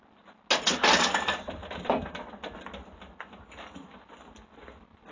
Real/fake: real